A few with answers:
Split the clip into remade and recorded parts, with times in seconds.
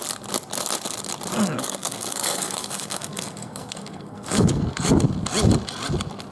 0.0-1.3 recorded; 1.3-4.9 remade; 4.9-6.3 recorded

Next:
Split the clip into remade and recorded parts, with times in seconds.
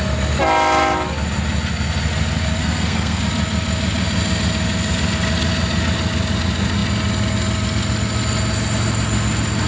0.0-2.6 recorded; 2.6-3.2 remade; 3.2-9.7 recorded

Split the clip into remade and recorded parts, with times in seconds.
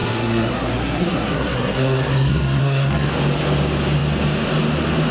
0.0-3.1 remade; 3.1-5.1 recorded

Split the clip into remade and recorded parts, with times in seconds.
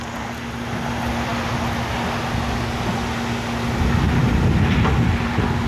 0.0-5.7 recorded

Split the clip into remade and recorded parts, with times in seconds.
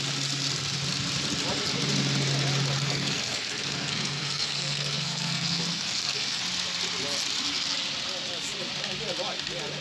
0.0-2.8 recorded; 2.8-6.4 remade; 6.4-9.8 recorded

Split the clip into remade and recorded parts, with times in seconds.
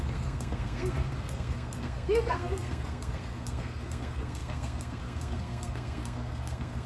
0.0-6.9 remade